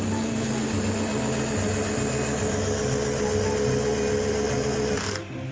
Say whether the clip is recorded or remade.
recorded